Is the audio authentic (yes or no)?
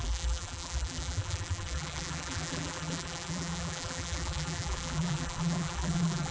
no